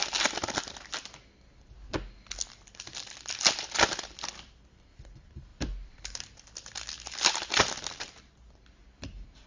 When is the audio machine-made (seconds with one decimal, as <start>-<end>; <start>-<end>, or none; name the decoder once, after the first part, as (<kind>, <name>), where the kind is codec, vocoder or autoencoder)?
2.5-9.5 (vocoder, BigVGAN v2)